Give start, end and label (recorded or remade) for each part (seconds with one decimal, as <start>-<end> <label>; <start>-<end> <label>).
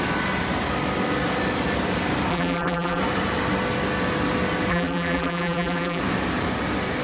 0.0-2.3 recorded; 2.3-3.0 remade; 3.0-4.7 recorded; 4.7-6.0 remade; 6.0-7.0 recorded